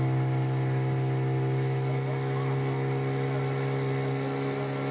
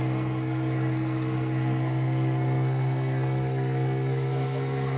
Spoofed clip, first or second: second